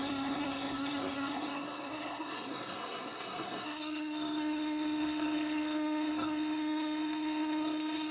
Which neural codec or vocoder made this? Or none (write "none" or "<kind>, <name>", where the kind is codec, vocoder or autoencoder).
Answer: codec, SNAC